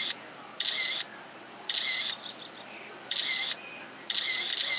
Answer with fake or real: real